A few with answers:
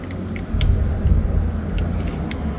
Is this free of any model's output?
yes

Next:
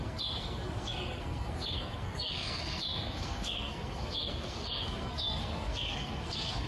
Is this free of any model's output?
no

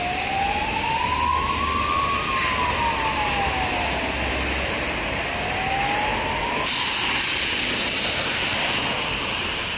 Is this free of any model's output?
yes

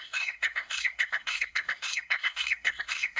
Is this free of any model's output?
no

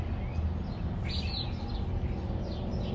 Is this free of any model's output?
yes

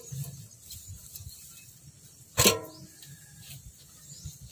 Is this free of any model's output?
yes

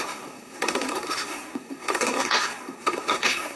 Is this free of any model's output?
no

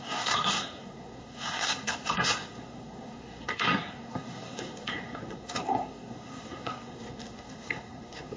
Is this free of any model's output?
no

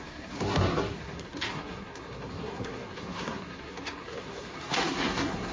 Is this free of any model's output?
no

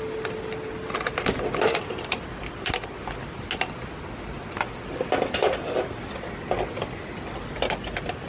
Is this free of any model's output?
yes